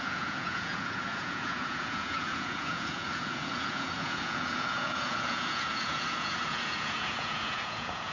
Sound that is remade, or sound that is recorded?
remade